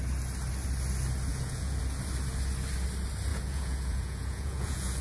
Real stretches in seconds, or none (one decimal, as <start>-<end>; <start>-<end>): 0.0-1.3; 1.8-3.3